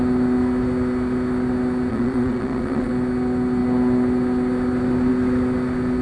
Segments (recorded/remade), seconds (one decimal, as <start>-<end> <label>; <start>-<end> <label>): 0.0-1.9 recorded; 1.9-2.9 remade; 2.9-6.0 recorded